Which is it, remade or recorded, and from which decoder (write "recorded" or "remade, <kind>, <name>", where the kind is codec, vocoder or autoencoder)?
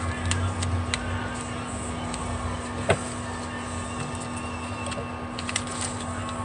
recorded